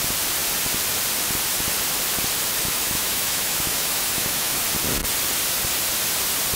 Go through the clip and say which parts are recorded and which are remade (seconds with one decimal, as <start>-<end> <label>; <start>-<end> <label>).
0.0-2.6 recorded; 2.6-4.6 remade; 4.6-6.6 recorded